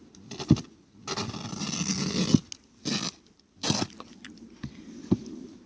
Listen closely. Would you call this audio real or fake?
real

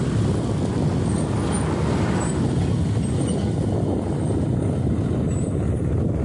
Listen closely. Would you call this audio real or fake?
real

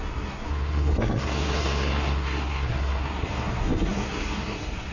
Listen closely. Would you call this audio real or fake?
fake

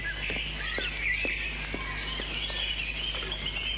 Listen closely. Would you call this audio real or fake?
real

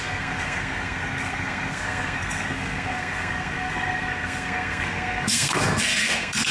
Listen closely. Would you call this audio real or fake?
fake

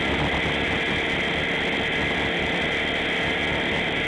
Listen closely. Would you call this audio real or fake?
real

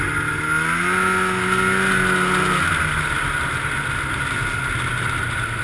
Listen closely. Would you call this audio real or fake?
real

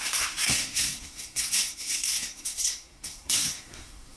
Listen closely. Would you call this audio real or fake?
fake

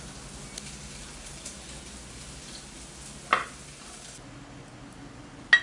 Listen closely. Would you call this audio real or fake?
real